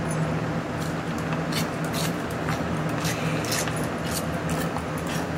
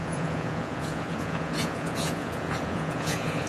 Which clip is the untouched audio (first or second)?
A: first